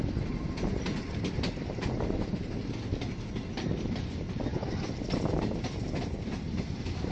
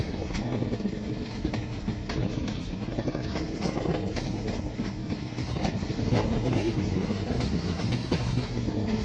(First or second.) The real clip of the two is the first